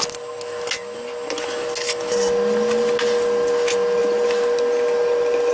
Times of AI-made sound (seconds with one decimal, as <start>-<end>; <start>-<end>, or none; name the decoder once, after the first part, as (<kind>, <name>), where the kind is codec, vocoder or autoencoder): none